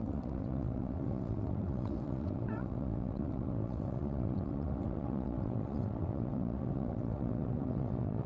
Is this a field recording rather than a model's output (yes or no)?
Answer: no